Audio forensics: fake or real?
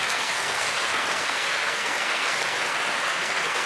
fake